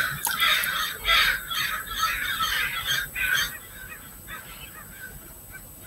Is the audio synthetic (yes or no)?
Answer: no